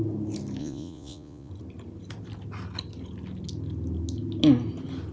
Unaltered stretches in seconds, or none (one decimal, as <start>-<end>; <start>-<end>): 0.0-0.6; 1.5-5.1